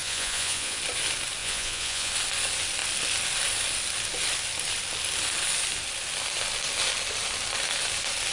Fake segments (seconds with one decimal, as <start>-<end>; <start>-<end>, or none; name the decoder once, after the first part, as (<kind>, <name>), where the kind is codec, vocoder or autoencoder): 0.0-0.8 (vocoder, Vocos); 1.4-2.1